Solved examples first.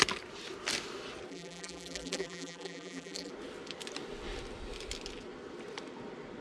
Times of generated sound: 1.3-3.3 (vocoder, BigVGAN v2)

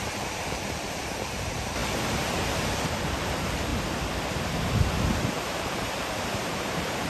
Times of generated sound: 0.0-3.7 (vocoder, BigVGAN v2); 5.3-7.1

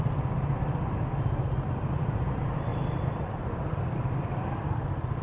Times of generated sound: 2.7-5.2 (vocoder, BigVGAN v2)

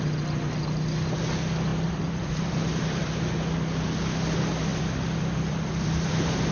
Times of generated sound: 1.7-3.3 (vocoder, BigVGAN v2); 4.7-6.1